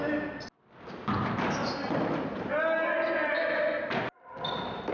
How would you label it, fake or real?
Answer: real